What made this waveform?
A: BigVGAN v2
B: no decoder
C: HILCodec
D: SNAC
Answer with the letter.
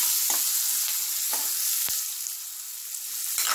B